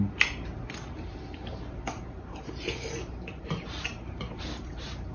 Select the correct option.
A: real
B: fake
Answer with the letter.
B